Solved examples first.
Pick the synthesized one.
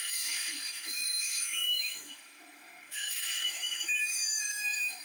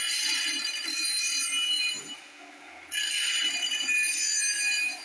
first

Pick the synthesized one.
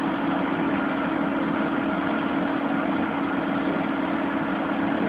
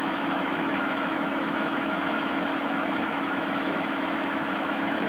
second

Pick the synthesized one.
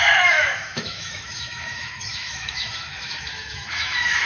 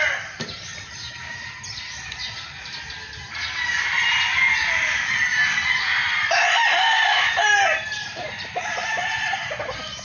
first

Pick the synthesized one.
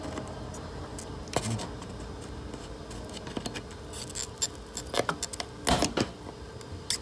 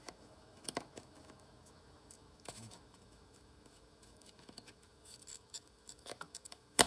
second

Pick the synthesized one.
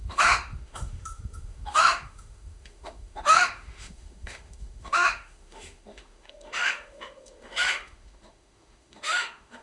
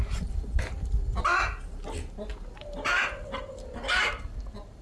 first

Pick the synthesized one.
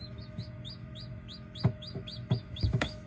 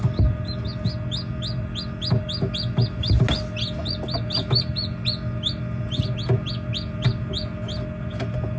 first